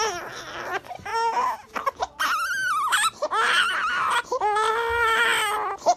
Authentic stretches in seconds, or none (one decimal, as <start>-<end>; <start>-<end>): 0.0-6.0